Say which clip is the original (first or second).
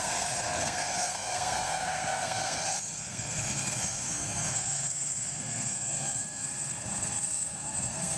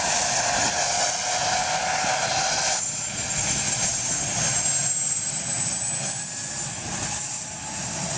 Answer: second